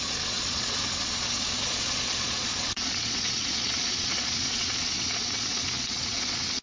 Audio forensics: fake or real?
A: fake